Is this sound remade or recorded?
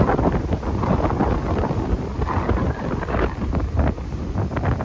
recorded